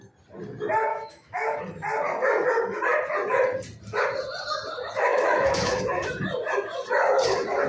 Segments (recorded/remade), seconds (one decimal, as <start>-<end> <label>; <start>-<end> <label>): 0.0-0.9 recorded; 0.9-1.6 remade; 1.6-5.1 recorded; 5.1-5.8 remade; 5.8-7.7 recorded